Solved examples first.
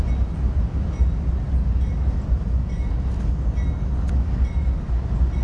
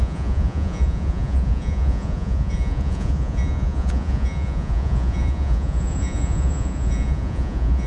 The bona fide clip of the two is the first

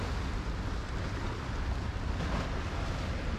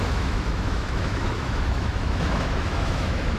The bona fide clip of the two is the first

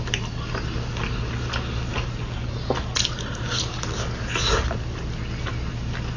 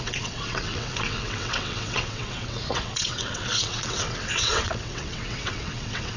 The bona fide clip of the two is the first